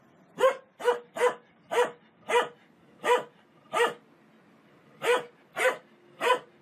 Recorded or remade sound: recorded